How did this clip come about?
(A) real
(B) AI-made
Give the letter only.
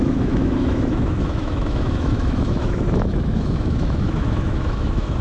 B